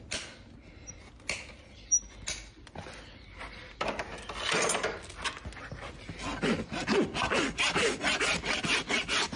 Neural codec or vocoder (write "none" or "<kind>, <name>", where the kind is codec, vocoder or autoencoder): none